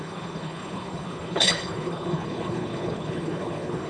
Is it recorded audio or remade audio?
remade